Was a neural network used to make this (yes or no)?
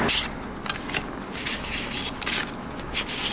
no